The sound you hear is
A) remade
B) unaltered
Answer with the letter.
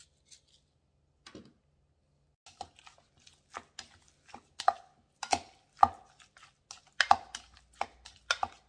B